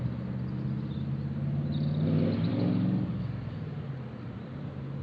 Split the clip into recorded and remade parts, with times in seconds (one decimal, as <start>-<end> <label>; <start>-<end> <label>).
0.0-2.5 recorded; 2.5-3.9 remade; 3.9-5.0 recorded